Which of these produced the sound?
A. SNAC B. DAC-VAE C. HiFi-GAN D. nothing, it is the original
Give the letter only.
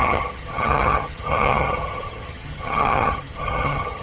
C